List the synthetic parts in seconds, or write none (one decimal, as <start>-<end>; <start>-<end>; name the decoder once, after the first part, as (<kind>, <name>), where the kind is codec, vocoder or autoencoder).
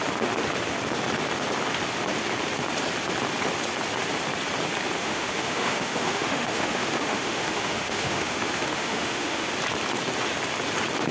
5.0-9.5 (autoencoder, DAC-VAE)